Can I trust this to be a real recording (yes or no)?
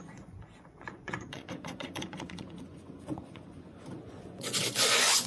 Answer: no